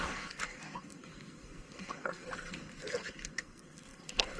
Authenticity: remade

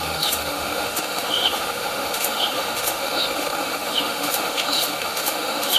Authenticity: remade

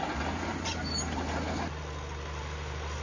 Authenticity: recorded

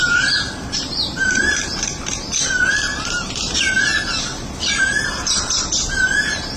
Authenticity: remade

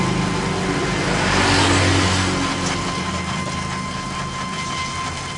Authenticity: recorded